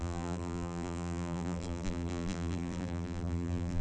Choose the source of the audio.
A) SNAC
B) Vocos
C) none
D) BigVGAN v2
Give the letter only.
D